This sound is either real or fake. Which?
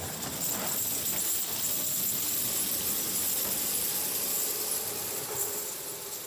real